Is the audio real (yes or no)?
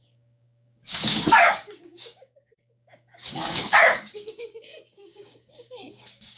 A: no